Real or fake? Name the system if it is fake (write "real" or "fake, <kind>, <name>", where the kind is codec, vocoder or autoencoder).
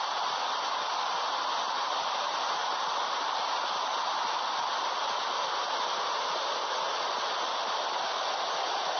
real